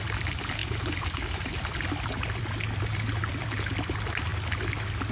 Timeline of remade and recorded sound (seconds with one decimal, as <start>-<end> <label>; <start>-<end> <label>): 0.0-0.6 recorded; 0.6-3.6 remade; 3.6-5.1 recorded

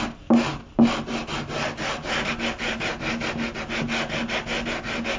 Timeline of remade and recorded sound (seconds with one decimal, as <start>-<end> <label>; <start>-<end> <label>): 0.0-5.2 recorded

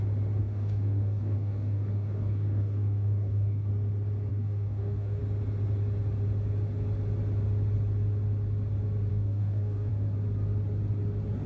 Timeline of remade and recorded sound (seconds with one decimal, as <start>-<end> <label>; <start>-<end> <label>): 0.0-0.4 recorded; 0.4-3.7 remade; 3.7-4.3 recorded; 4.3-5.2 remade; 5.2-9.1 recorded; 9.1-9.9 remade; 9.9-11.5 recorded

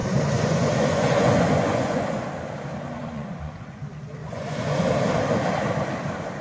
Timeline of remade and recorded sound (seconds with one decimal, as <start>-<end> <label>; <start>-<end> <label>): 0.0-2.2 remade; 2.2-3.0 recorded; 3.0-3.8 remade; 3.8-4.2 recorded; 4.2-4.9 remade; 4.9-6.4 recorded

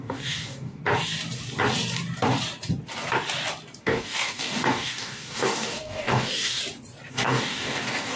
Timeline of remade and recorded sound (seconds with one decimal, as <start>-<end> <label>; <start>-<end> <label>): 0.0-0.8 remade; 0.8-3.8 recorded; 3.8-6.6 remade; 6.6-7.1 recorded; 7.1-8.2 remade

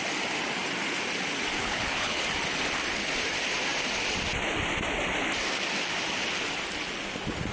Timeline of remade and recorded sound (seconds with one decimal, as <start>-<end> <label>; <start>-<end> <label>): 0.0-1.6 recorded; 1.6-2.2 remade; 2.2-7.5 recorded

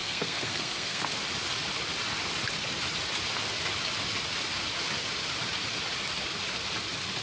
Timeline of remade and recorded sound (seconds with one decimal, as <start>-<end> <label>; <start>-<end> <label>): 0.0-1.1 remade; 1.1-7.2 recorded

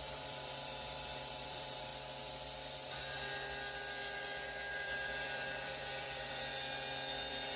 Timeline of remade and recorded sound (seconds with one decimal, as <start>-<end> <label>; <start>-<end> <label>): 0.0-1.9 remade; 1.9-4.7 recorded; 4.7-6.5 remade; 6.5-7.1 recorded; 7.1-7.6 remade